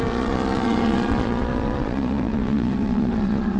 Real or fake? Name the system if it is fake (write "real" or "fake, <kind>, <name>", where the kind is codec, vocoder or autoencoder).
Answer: fake, vocoder, Vocos